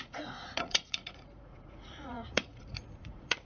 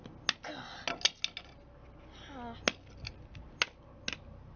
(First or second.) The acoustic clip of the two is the second